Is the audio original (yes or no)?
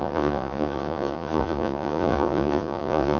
no